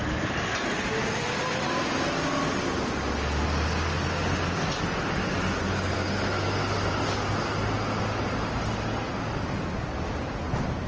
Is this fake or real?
real